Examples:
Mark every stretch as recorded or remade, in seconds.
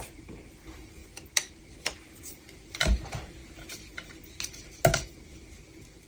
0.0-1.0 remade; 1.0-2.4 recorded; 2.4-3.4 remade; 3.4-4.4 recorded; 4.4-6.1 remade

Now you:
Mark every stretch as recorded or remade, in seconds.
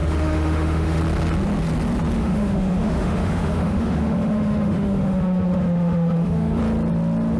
0.0-1.0 remade; 1.0-2.2 recorded; 2.2-6.6 remade; 6.6-7.4 recorded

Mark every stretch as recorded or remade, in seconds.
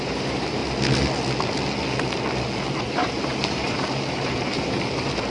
0.0-0.6 remade; 0.6-2.8 recorded; 2.8-5.3 remade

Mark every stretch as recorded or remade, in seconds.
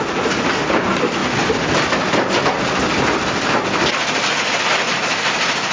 0.0-5.7 recorded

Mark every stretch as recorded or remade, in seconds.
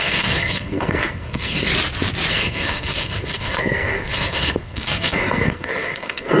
0.0-1.7 remade; 1.7-2.3 recorded; 2.3-6.4 remade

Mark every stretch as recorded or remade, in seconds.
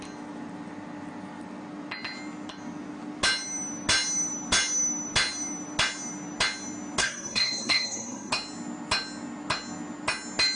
0.0-7.0 recorded; 7.0-8.3 remade; 8.3-10.6 recorded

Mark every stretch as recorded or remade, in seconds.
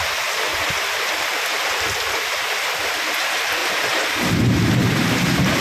0.0-3.6 recorded; 3.6-4.3 remade; 4.3-4.8 recorded; 4.8-5.6 remade